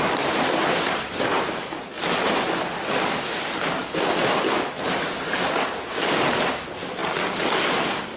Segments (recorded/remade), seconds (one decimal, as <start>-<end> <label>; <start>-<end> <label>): 0.0-8.2 recorded